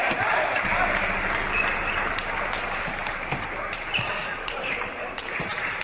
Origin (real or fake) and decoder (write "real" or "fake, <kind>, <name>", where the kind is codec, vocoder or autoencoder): fake, vocoder, BigVGAN v2